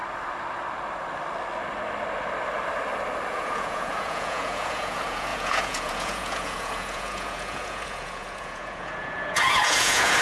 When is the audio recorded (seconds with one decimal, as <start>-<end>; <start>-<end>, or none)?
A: 0.0-3.3